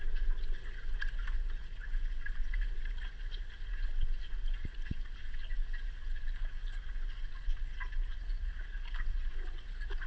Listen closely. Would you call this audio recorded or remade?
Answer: recorded